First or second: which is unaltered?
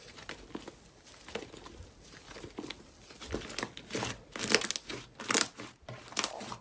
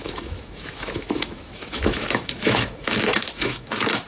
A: first